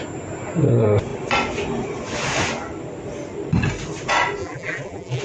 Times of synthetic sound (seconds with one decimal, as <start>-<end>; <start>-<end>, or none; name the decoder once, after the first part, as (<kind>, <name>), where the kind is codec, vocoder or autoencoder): 4.4-5.2 (vocoder, BigVGAN v2)